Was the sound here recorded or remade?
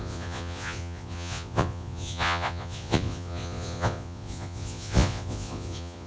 remade